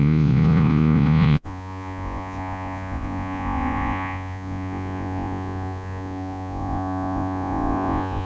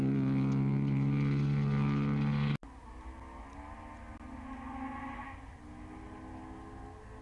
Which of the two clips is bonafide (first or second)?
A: second